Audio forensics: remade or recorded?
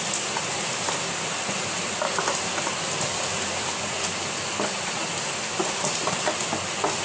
recorded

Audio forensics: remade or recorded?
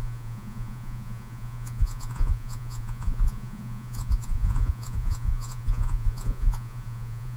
remade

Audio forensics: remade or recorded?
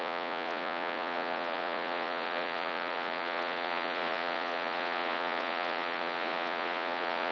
remade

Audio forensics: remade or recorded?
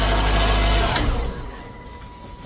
recorded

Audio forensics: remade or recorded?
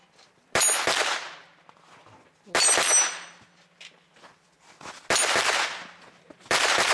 recorded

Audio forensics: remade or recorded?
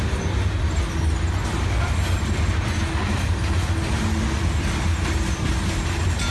recorded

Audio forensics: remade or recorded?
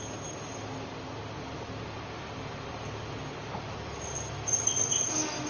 recorded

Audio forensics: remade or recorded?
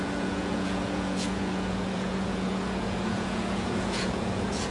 remade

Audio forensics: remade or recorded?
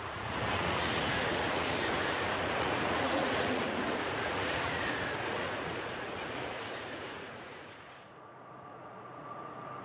remade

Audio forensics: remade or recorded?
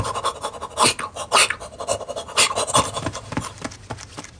recorded